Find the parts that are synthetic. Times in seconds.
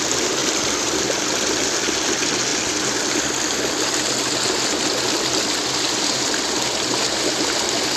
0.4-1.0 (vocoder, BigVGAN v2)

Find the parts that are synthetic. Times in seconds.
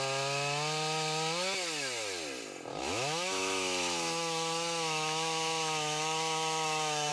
2.7-7.1 (autoencoder, DAC-VAE)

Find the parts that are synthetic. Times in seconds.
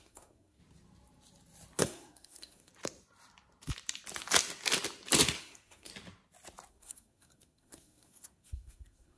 0.0-0.6 (codec, SNAC); 1.8-2.7; 5.4-5.9; 6.7-9.2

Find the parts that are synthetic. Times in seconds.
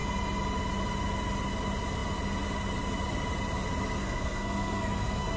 4.0-5.4 (codec, SNAC)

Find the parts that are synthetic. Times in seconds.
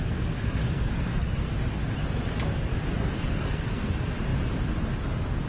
0.0-1.5 (codec, SNAC); 3.0-3.9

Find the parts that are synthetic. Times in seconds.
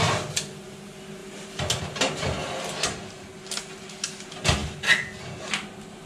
1.2-1.8 (vocoder, BigVGAN v2)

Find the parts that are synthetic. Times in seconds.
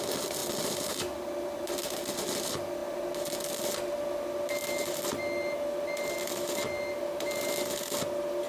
none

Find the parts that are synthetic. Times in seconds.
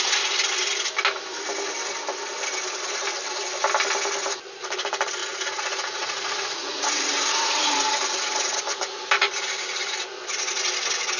5.2-8.6 (vocoder, Vocos)